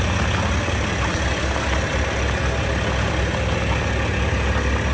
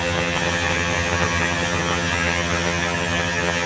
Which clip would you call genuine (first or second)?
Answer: first